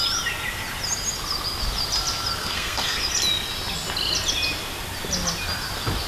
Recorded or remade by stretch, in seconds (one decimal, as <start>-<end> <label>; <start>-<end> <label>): 0.0-2.4 recorded; 2.4-3.0 remade; 3.0-6.1 recorded

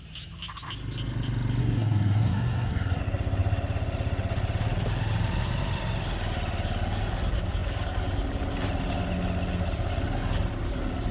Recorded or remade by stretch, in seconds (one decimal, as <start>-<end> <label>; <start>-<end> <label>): 0.0-1.6 recorded; 1.6-3.0 remade; 3.0-11.1 recorded

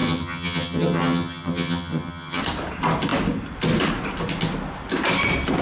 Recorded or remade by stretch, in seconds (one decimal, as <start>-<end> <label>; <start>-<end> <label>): 0.0-2.4 remade; 2.4-5.6 recorded

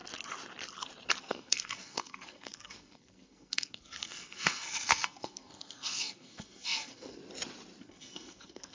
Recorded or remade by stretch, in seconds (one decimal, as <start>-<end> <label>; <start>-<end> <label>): 0.0-1.2 recorded; 1.2-7.2 remade; 7.2-7.8 recorded; 7.8-8.7 remade

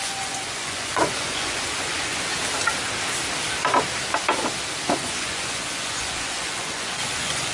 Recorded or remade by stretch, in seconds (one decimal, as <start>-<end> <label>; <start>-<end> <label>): 0.0-2.3 remade; 2.3-4.9 recorded; 4.9-7.5 remade

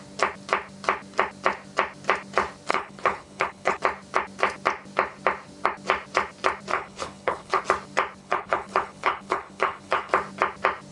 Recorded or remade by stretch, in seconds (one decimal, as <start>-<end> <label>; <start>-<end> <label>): 0.0-2.7 recorded; 2.7-3.8 remade; 3.8-6.7 recorded; 6.7-7.6 remade; 7.6-8.2 recorded; 8.2-10.1 remade; 10.1-10.9 recorded